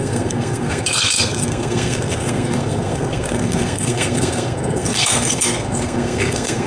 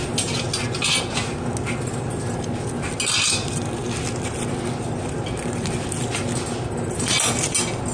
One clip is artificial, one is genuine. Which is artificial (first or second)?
first